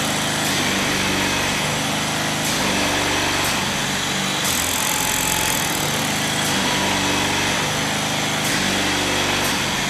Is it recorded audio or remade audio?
recorded